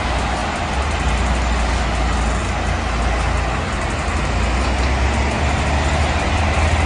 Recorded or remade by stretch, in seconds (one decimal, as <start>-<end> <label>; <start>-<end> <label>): 0.0-6.9 recorded